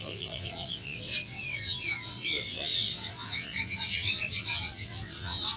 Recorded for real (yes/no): no